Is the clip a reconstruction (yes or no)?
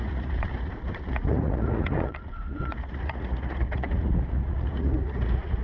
yes